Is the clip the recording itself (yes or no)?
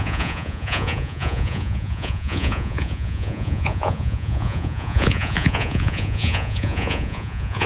no